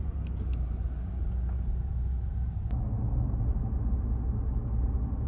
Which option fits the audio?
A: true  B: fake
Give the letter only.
A